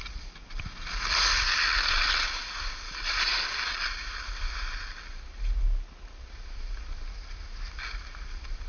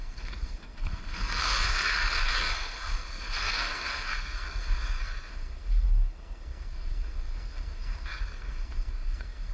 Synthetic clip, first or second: second